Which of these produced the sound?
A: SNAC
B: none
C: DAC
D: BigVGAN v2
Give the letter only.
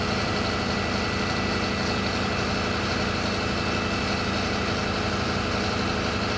B